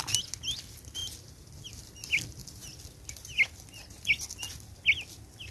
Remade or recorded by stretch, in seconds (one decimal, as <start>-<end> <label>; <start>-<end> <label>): 0.0-5.5 recorded